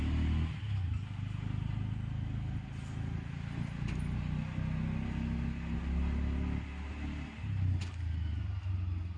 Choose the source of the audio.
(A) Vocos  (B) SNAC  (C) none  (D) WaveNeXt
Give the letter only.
C